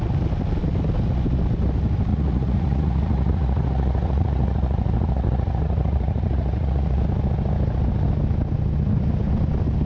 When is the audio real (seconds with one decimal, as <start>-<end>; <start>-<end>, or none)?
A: 0.0-2.1; 7.0-9.9